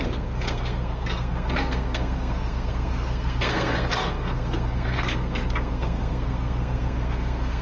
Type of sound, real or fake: fake